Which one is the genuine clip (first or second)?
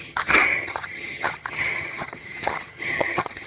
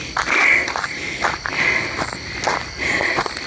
second